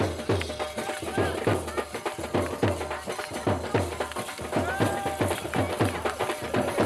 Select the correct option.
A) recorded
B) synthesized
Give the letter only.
A